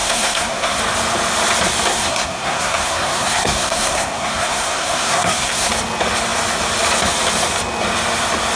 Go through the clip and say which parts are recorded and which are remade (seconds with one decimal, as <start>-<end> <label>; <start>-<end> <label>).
0.0-0.8 remade; 0.8-1.9 recorded; 1.9-5.7 remade; 5.7-8.6 recorded